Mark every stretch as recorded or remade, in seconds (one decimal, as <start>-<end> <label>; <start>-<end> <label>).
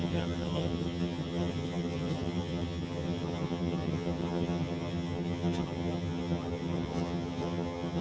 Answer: 0.0-8.0 remade